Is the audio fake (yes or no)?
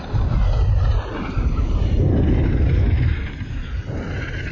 no